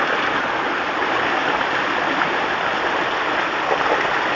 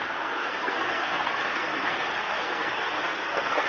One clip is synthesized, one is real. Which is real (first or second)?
first